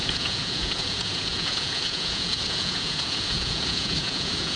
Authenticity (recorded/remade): remade